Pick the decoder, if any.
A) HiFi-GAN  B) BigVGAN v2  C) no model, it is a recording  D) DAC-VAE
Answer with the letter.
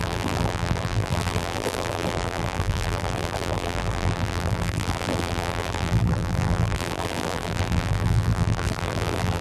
B